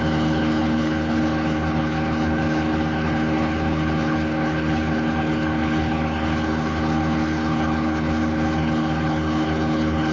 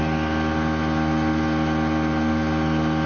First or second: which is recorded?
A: second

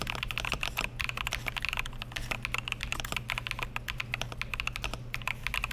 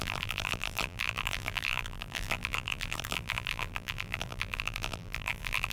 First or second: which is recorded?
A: first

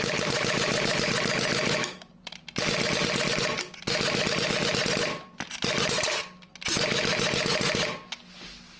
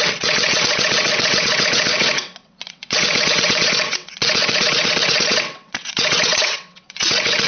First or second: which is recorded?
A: first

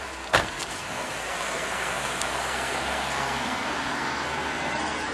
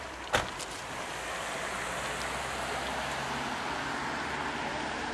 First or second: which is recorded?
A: second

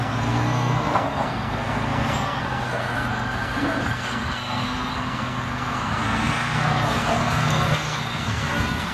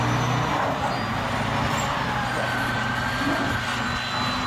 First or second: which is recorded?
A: second